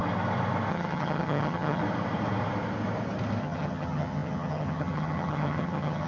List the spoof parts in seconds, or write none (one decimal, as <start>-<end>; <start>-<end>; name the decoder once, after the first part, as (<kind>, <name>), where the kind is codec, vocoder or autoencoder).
0.7-1.8 (vocoder, HiFi-GAN); 3.4-6.1